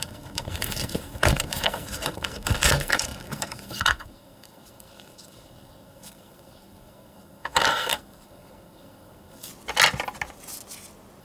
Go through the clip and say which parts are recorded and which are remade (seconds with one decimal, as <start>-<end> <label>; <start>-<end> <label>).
0.0-9.5 remade; 9.5-11.2 recorded